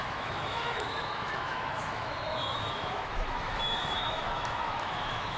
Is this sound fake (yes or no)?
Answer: yes